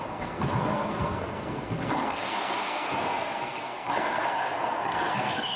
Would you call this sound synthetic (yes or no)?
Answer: yes